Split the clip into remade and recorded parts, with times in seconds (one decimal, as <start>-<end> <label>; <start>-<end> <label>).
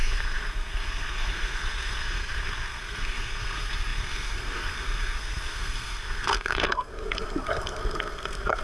0.0-8.6 remade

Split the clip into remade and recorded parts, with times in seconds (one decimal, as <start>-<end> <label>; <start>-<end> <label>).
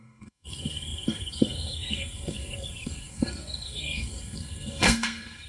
0.0-5.5 remade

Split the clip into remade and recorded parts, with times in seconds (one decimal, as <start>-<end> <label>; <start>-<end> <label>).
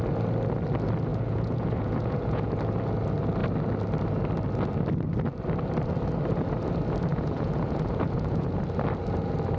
0.0-1.1 recorded; 1.1-2.5 remade; 2.5-7.1 recorded; 7.1-8.6 remade; 8.6-9.6 recorded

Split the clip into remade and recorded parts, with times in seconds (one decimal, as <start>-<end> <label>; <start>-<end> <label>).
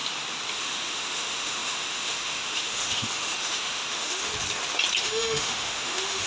0.0-0.5 recorded; 0.5-4.3 remade; 4.3-5.0 recorded; 5.0-6.3 remade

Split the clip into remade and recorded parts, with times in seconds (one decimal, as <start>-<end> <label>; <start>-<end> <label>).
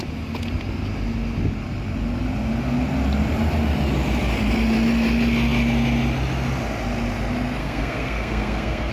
0.0-7.6 recorded; 7.6-8.9 remade